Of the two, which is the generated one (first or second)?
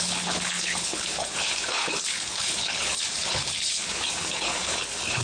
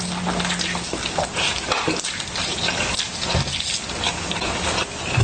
first